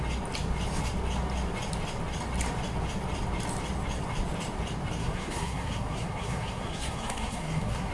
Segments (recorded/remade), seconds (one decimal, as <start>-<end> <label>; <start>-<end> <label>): 0.0-5.0 recorded; 5.0-7.9 remade